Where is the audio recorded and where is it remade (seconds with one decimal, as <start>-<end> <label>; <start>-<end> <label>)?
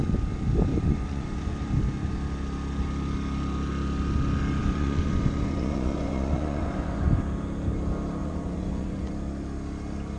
0.0-0.7 recorded; 0.7-1.6 remade; 1.6-4.6 recorded; 4.6-7.1 remade; 7.1-8.2 recorded; 8.2-9.1 remade; 9.1-10.2 recorded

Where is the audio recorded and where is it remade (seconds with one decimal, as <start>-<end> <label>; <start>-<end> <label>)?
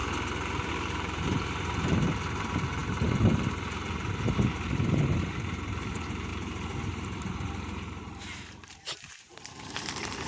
0.0-0.7 recorded; 0.7-10.3 remade